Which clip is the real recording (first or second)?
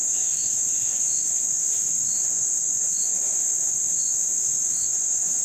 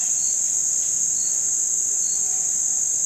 second